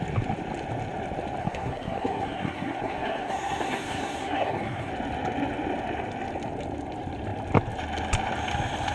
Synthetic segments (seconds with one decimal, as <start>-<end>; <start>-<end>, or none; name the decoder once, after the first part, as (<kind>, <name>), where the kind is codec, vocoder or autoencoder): 1.4-4.9 (codec, SNAC)